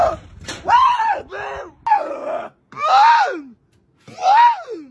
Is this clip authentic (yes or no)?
yes